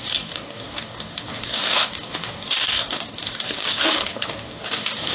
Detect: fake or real fake